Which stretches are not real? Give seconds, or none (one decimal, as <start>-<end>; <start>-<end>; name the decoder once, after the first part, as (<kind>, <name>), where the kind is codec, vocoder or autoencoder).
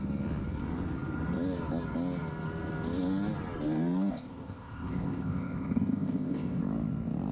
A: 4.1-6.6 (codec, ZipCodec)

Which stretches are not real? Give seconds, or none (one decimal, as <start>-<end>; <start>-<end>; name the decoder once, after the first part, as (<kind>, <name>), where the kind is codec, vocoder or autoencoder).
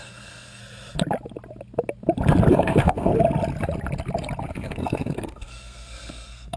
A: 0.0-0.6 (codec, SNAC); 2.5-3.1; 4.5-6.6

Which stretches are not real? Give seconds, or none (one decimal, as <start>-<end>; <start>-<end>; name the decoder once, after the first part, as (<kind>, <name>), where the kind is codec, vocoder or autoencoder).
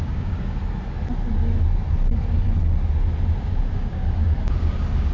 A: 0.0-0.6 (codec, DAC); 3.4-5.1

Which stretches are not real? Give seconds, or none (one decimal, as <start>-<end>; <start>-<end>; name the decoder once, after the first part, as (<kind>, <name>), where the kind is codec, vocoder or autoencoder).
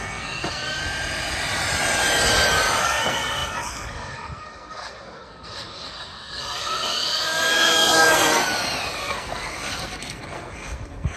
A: 0.0-0.8 (codec, SNAC); 2.8-8.4; 9.0-11.2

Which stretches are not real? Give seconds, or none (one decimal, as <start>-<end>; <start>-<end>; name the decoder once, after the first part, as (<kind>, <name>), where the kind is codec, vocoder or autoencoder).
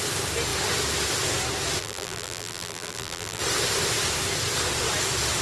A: 1.8-3.4 (vocoder, BigVGAN v2)